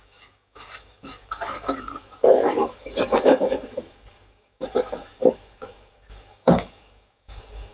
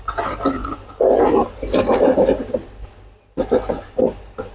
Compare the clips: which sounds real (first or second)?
second